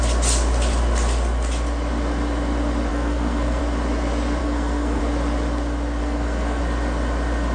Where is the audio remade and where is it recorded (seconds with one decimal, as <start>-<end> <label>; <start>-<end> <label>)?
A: 0.0-2.9 recorded; 2.9-3.6 remade; 3.6-4.4 recorded; 4.4-5.0 remade; 5.0-6.0 recorded; 6.0-6.6 remade; 6.6-7.5 recorded